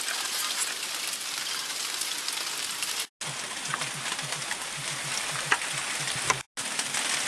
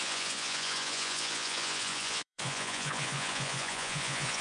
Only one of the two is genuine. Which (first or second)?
first